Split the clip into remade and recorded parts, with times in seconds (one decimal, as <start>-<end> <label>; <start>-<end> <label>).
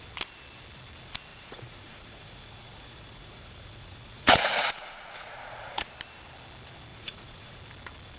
0.0-1.3 recorded; 1.3-5.9 remade; 5.9-6.9 recorded; 6.9-7.6 remade; 7.6-8.2 recorded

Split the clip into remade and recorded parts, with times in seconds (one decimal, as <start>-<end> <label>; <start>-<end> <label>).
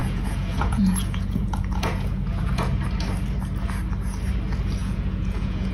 0.0-2.8 remade; 2.8-4.8 recorded; 4.8-5.7 remade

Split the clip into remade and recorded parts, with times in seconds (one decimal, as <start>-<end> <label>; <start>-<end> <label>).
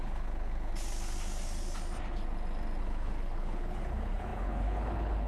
0.0-0.7 remade; 0.7-2.8 recorded; 2.8-5.3 remade